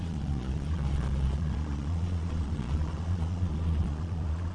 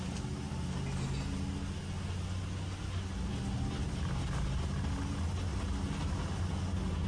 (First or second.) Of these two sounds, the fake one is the first